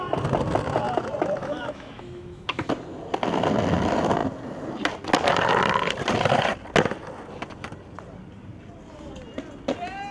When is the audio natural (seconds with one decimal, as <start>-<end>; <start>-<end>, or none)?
0.0-1.4; 2.7-10.1